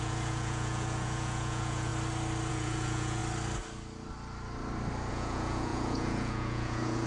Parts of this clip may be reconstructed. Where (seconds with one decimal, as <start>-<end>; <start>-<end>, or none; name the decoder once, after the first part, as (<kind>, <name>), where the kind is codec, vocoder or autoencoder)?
0.0-1.9 (vocoder, Vocos); 2.5-3.2; 5.1-7.1